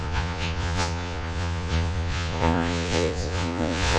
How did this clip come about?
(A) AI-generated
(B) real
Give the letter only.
A